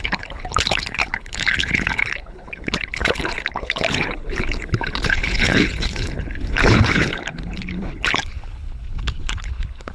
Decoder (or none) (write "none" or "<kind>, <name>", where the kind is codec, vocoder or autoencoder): codec, HILCodec